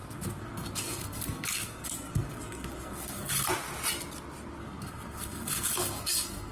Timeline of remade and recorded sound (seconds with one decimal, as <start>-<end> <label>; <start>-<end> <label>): 0.0-3.5 remade; 3.5-4.6 recorded; 4.6-6.5 remade